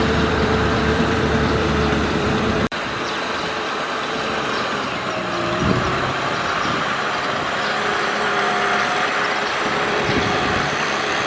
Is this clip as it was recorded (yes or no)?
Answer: no